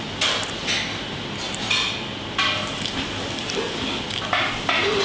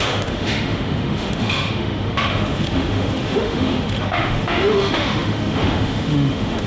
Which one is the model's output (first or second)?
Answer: second